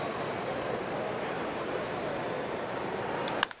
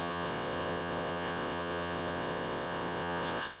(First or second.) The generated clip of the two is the second